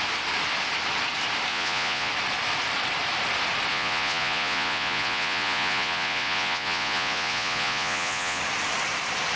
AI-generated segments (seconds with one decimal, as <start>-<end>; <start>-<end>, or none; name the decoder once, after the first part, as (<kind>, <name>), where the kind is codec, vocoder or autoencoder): 1.5-2.1 (vocoder, Vocos); 3.7-8.4